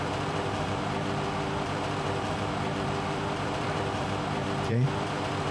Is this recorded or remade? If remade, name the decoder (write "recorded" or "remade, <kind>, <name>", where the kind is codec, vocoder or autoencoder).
remade, vocoder, BigVGAN v2